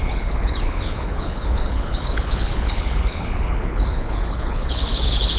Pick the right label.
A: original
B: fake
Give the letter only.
B